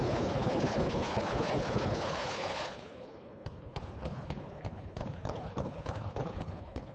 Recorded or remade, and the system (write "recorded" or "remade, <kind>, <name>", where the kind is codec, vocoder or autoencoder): remade, codec, HILCodec